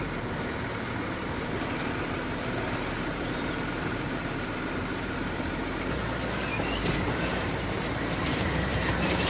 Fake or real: fake